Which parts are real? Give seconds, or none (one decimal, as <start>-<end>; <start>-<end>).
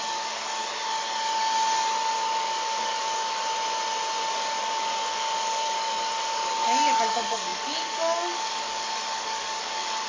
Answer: 0.6-2.1; 3.5-4.3